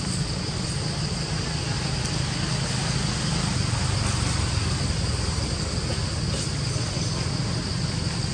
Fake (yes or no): no